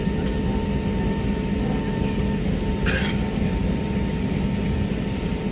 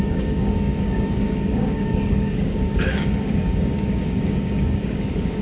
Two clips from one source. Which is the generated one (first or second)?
second